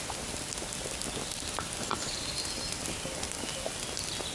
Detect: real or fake real